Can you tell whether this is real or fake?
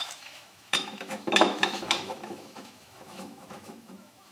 fake